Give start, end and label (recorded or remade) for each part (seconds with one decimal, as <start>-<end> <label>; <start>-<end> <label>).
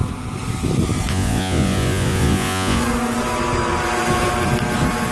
0.0-1.1 recorded; 1.1-2.8 remade; 2.8-5.1 recorded